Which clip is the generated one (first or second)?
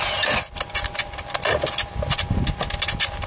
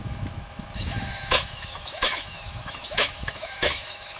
second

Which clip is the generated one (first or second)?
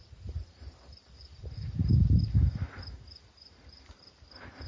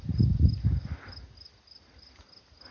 first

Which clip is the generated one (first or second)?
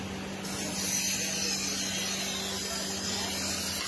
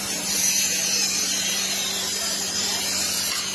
second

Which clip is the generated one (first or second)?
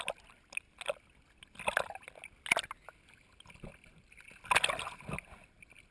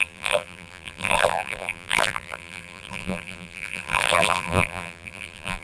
second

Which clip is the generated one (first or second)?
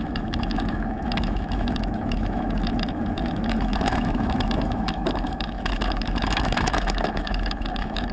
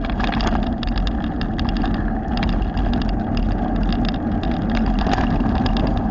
first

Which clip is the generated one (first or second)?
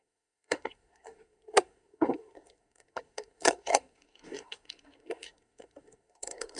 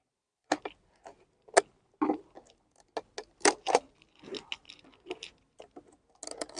first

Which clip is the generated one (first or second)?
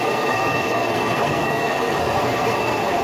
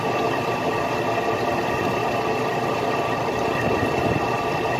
first